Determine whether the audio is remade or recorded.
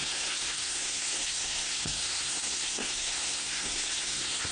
remade